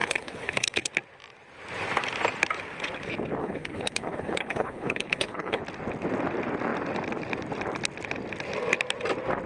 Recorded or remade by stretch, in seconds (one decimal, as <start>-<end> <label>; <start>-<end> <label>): 0.0-0.9 remade; 0.9-3.4 recorded; 3.4-5.6 remade; 5.6-9.5 recorded